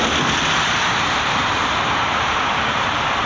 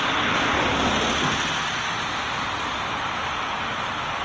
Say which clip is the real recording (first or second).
second